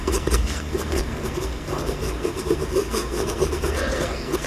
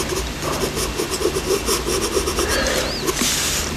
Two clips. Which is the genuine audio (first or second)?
second